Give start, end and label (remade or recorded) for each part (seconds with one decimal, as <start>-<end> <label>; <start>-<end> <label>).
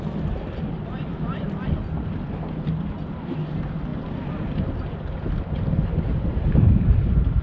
0.0-7.4 recorded